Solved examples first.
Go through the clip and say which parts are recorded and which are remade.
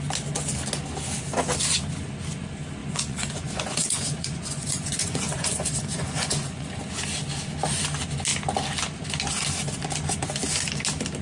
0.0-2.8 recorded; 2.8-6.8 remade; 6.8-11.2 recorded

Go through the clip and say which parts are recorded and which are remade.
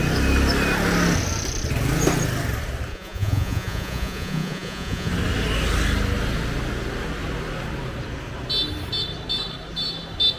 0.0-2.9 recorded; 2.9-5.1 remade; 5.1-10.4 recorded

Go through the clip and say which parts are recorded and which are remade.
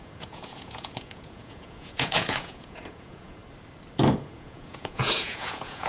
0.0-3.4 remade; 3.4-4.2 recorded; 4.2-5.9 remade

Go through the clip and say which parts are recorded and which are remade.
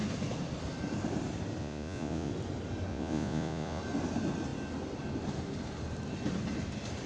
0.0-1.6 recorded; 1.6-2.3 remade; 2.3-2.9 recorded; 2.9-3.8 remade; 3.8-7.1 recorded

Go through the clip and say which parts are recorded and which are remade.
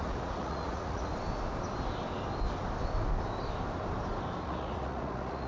0.0-1.1 remade; 1.1-4.4 recorded; 4.4-5.5 remade